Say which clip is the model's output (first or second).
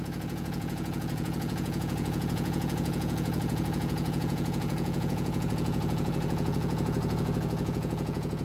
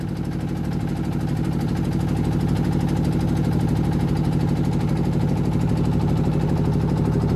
first